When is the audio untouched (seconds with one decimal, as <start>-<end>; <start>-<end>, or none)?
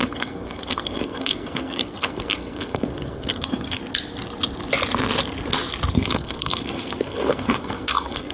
3.8-5.9